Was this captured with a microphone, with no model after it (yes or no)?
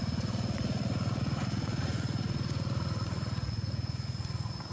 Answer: no